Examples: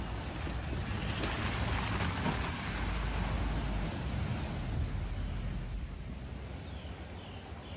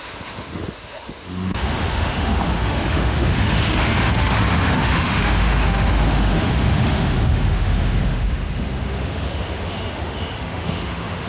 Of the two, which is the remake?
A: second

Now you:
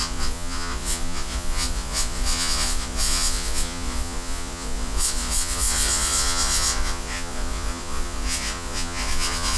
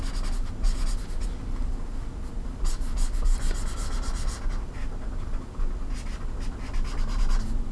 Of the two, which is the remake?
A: first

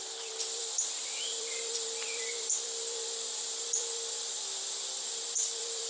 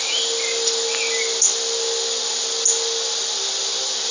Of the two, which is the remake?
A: first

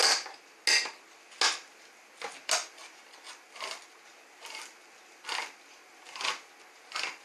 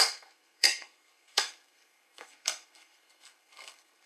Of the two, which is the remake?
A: second